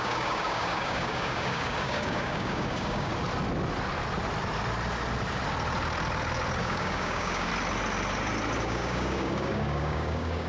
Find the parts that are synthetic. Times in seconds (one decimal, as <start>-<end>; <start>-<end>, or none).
0.0-3.1; 6.6-7.5; 8.6-10.5